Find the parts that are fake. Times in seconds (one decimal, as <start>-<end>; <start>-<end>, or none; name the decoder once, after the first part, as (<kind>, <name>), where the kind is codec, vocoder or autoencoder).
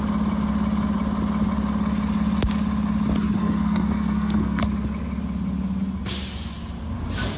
3.4-4.6 (codec, SNAC)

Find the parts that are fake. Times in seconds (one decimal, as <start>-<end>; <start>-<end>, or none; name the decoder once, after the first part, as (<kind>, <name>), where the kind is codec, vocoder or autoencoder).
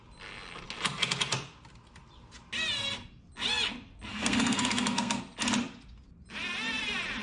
4.1-5.2 (codec, SNAC)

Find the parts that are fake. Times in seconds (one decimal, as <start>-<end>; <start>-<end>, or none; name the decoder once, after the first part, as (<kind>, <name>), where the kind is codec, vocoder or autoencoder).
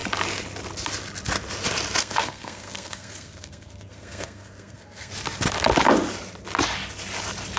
2.0-5.1 (codec, SNAC)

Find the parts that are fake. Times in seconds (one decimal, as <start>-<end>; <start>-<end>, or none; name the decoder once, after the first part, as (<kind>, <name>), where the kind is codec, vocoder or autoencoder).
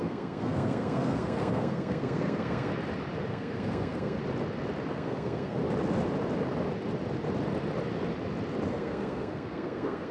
0.0-2.7 (codec, SNAC); 3.3-4.2; 4.9-5.6; 8.7-10.1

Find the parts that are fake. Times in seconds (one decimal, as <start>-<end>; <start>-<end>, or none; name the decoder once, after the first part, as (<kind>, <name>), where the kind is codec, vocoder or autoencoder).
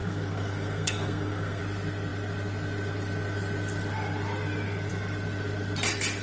0.0-1.6 (codec, SNAC)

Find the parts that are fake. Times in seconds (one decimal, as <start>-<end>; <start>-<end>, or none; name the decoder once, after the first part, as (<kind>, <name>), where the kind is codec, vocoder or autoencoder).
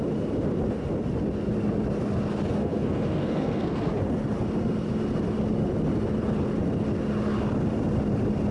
2.6-3.9 (codec, SNAC)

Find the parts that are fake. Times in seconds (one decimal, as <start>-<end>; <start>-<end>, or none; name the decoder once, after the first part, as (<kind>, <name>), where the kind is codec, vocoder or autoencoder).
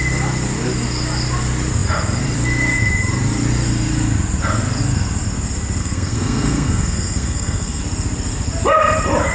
5.8-7.8 (codec, SNAC)